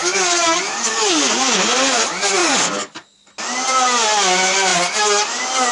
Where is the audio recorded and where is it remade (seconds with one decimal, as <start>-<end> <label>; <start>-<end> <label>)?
0.0-1.4 remade; 1.4-2.4 recorded; 2.4-3.3 remade; 3.3-5.7 recorded